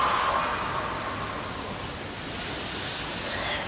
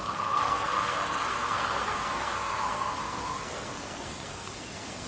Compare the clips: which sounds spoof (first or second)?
second